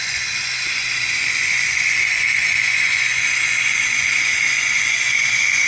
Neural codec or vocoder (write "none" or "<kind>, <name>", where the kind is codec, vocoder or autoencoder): vocoder, Vocos